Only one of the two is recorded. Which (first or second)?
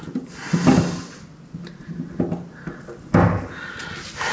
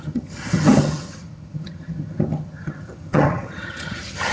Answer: first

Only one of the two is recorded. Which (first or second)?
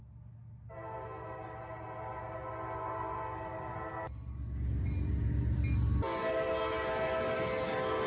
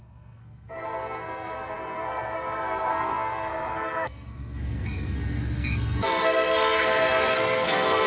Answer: first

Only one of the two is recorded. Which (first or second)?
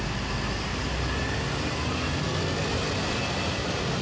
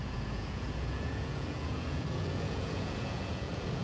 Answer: first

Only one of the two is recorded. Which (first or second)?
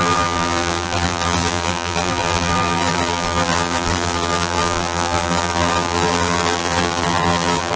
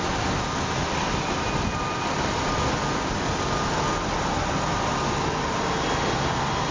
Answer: second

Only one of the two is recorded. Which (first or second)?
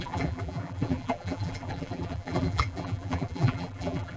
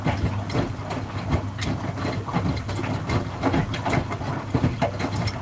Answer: second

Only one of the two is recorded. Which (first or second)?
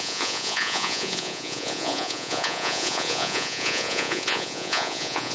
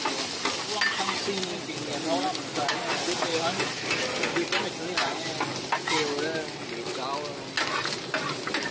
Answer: second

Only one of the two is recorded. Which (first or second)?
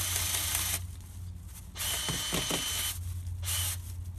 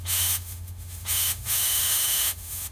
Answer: first